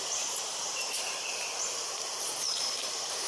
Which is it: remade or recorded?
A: remade